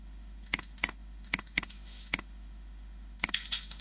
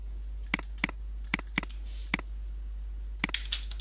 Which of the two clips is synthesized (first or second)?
first